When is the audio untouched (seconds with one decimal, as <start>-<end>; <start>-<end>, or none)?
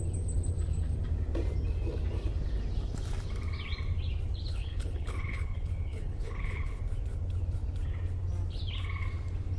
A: 0.0-4.5; 6.8-9.6